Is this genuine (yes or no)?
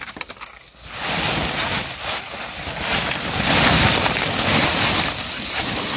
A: yes